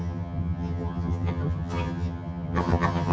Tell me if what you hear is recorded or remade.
remade